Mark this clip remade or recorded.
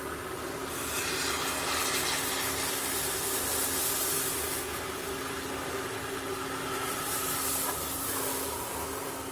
recorded